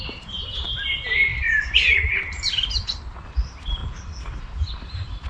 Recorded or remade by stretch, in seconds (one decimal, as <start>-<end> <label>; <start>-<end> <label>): 0.0-3.8 remade; 3.8-4.4 recorded; 4.4-5.3 remade